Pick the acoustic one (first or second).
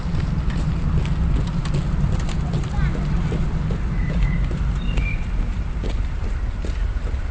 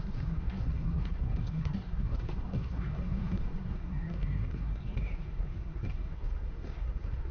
first